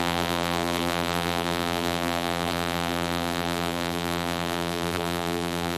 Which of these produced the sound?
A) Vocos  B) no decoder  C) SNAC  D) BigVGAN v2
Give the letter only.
D